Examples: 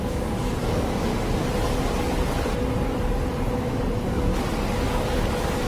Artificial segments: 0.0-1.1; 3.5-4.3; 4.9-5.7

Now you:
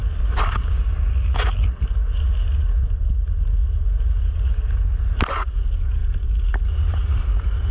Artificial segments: none

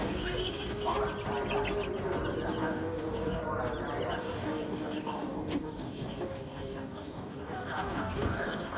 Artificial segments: 0.0-1.0; 2.6-3.4; 4.2-8.8